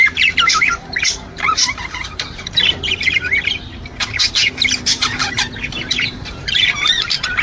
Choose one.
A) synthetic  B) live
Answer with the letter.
A